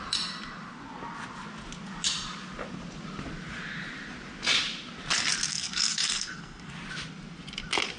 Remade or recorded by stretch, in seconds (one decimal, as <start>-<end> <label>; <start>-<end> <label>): 0.0-5.5 recorded; 5.5-6.7 remade; 6.7-8.0 recorded